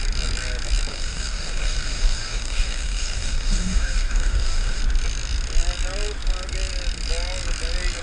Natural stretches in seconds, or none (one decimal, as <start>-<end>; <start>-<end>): 0.0-0.9; 4.8-8.0